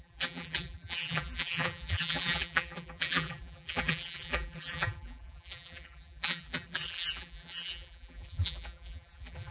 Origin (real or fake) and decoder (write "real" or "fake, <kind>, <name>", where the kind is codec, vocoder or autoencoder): fake, vocoder, BigVGAN v2